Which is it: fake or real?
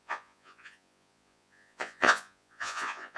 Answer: fake